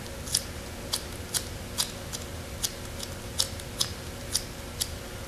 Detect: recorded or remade recorded